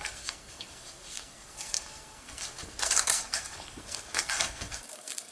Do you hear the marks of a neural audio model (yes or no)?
yes